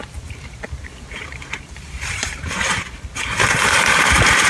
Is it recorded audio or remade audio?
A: remade